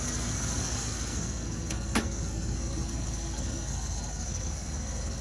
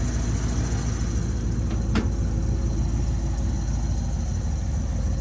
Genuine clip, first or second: second